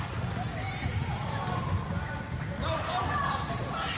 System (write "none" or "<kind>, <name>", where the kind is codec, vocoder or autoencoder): none